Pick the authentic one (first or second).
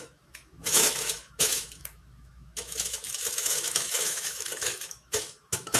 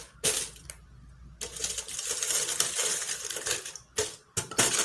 second